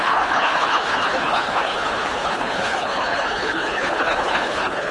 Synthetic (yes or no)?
yes